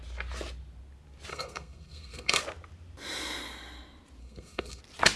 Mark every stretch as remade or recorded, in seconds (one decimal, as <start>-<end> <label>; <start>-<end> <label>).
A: 0.0-1.3 recorded; 1.3-2.4 remade; 2.4-4.2 recorded; 4.2-4.8 remade; 4.8-5.2 recorded